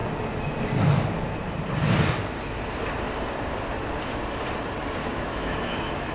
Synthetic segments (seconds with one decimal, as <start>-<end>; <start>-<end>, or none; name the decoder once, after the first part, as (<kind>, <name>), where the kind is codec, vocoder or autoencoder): 5.0-6.1 (autoencoder, DAC-VAE)